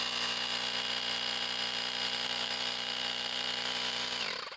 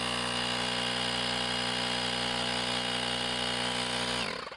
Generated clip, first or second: first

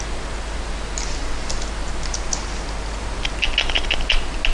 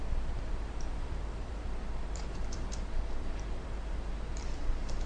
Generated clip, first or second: second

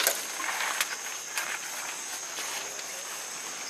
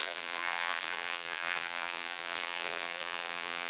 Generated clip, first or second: second